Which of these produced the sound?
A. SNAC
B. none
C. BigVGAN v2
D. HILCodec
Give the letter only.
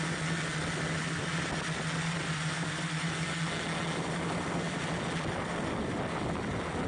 B